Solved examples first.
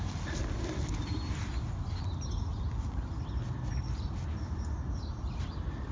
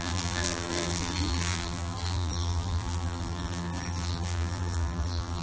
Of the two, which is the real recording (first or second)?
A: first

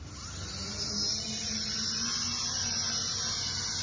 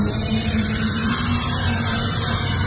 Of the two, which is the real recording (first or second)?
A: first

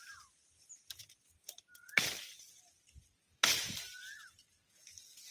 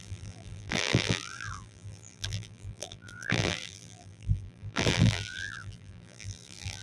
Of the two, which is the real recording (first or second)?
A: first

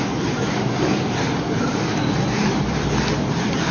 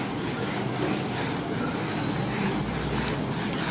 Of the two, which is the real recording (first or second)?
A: second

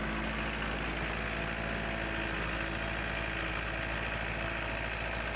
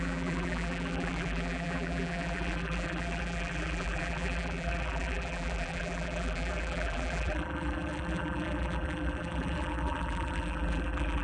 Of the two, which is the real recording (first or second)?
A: first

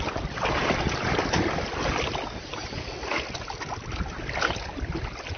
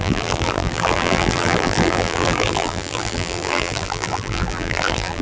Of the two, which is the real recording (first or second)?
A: first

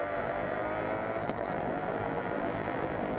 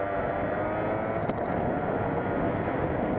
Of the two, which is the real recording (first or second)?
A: second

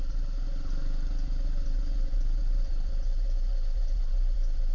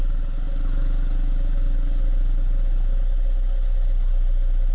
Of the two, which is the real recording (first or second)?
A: second